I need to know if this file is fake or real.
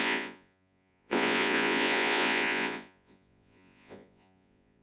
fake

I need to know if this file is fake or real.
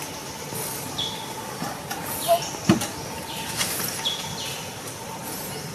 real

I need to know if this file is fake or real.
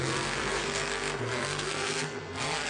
fake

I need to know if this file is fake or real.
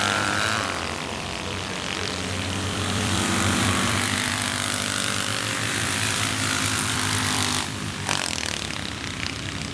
fake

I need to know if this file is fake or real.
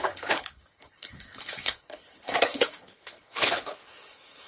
fake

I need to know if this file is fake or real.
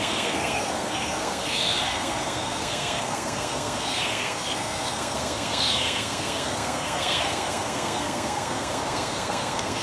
fake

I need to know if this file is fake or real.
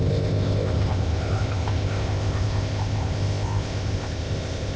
fake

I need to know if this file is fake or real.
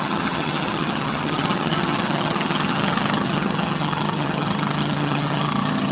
fake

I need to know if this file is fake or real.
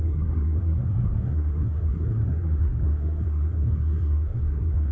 fake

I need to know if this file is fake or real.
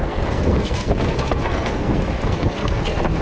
fake